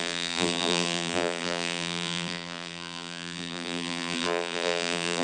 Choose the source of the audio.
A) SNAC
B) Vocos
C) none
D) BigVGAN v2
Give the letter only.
D